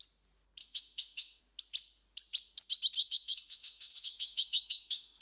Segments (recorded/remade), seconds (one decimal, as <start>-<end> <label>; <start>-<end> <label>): 0.0-0.6 recorded; 0.6-1.4 remade; 1.4-3.0 recorded; 3.0-5.2 remade